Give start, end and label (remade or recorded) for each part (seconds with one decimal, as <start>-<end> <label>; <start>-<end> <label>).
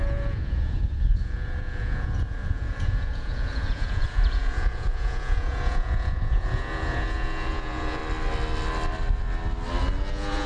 0.0-8.0 remade; 8.0-10.1 recorded; 10.1-10.5 remade